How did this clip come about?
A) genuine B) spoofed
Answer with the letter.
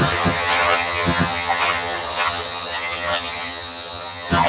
B